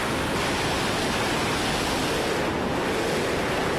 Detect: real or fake real